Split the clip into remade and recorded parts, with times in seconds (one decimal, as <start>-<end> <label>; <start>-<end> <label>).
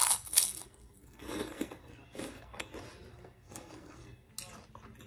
0.0-2.7 remade; 2.7-3.1 recorded; 3.1-4.3 remade; 4.3-5.1 recorded